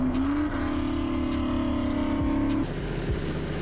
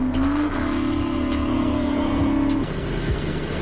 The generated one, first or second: second